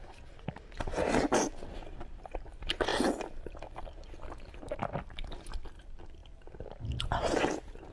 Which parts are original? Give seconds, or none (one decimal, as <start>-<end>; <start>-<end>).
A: 0.0-7.9